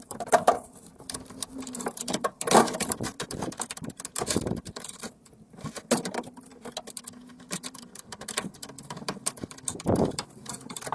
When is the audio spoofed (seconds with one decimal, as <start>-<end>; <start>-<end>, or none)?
0.0-6.5; 7.3-10.9